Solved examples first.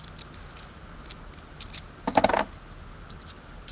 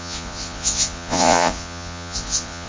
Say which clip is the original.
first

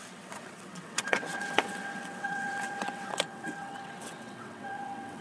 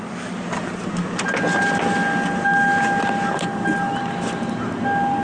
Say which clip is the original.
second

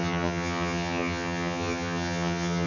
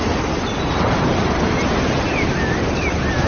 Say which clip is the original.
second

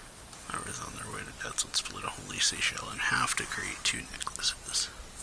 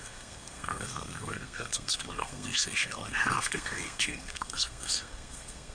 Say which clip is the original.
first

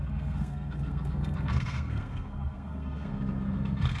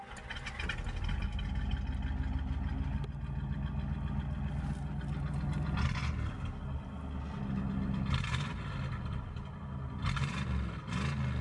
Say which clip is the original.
second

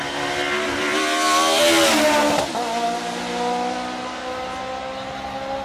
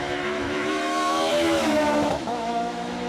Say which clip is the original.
first